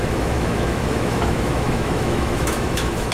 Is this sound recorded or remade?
remade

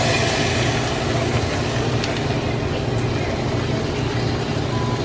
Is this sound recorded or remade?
recorded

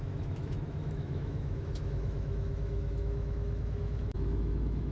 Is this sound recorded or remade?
remade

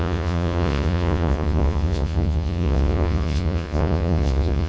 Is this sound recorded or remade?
remade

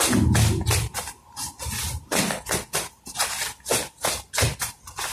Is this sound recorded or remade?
recorded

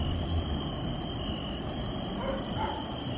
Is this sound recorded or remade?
recorded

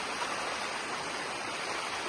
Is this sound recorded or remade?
recorded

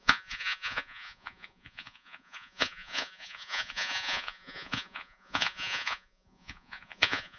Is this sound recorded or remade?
remade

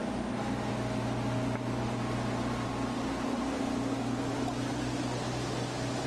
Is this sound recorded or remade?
recorded